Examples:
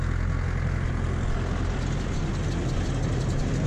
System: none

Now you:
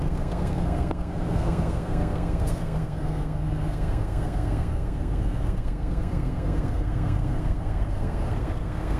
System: codec, SNAC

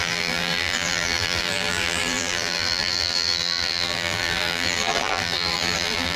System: vocoder, BigVGAN v2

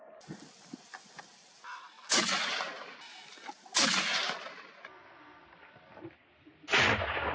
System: none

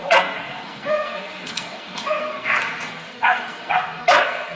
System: codec, SNAC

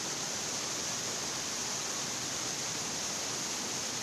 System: none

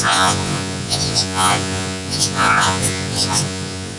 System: vocoder, Vocos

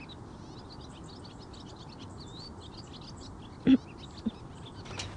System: none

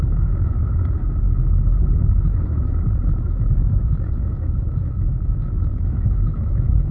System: autoencoder, DAC-VAE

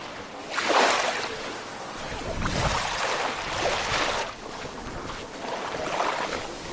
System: none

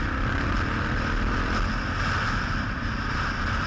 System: none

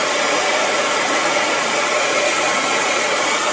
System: vocoder, Vocos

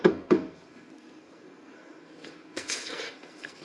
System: codec, SNAC